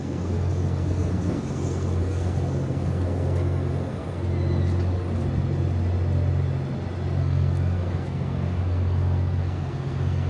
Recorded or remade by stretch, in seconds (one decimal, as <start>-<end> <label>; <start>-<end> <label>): 0.0-4.3 remade; 4.3-7.2 recorded; 7.2-10.3 remade